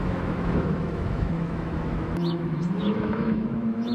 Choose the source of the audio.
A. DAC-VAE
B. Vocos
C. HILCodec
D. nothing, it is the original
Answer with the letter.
A